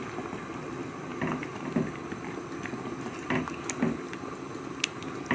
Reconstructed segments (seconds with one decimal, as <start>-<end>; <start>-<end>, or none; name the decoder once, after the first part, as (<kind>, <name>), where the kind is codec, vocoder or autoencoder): none